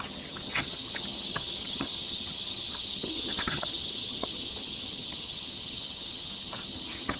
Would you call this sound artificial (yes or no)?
yes